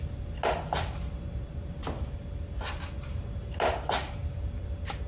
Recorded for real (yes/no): yes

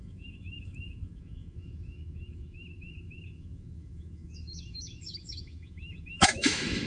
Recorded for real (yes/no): no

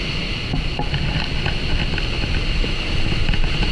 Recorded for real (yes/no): yes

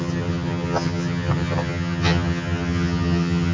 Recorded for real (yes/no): no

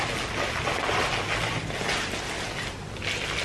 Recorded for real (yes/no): yes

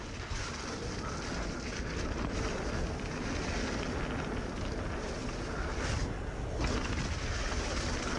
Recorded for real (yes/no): yes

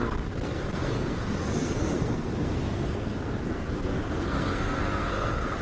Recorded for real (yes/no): no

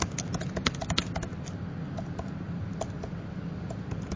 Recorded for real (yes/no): yes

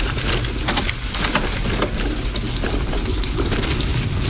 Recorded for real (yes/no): yes